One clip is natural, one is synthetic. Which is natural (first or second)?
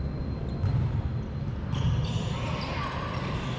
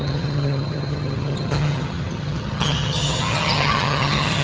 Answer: first